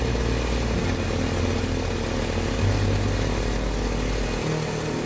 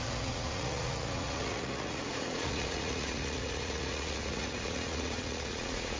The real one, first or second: first